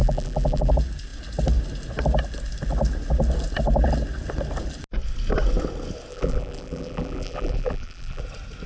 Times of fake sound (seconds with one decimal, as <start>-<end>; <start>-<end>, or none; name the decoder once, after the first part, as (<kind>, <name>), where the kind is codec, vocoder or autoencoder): 0.0-0.7 (vocoder, BigVGAN v2); 6.1-8.2